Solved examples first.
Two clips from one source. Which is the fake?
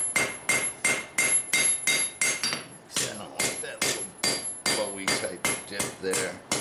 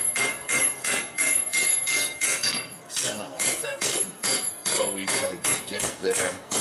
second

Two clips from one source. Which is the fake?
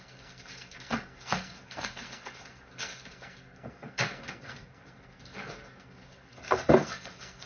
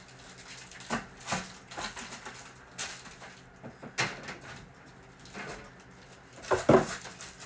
first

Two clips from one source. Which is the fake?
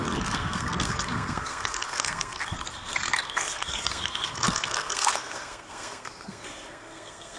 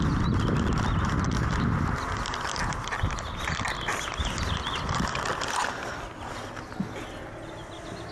first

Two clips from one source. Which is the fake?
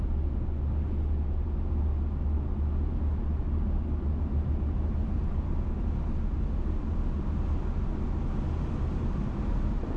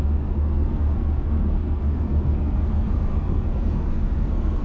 second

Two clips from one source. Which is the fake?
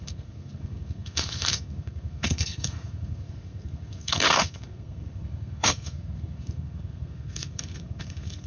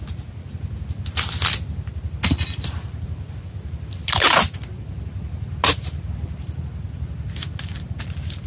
first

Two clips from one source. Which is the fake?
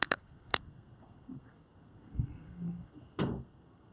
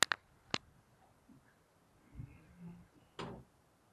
first